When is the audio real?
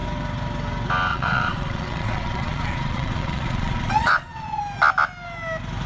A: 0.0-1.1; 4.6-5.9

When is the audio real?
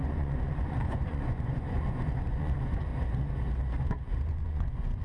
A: 2.9-3.8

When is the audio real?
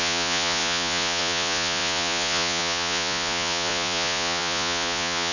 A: none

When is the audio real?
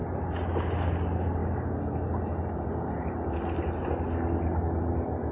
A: 0.0-5.3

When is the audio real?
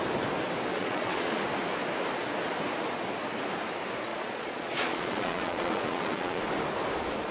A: 0.0-0.7; 1.4-4.1; 6.4-7.3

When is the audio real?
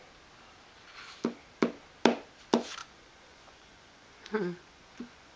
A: 0.0-2.8